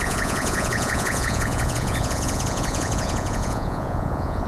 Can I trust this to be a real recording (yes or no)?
no